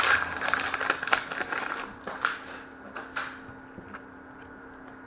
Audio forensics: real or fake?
real